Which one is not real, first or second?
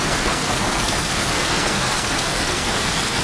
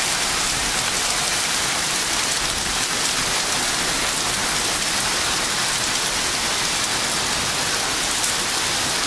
first